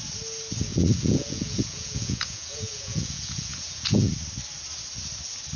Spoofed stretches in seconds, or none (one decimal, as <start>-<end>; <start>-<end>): 0.7-4.1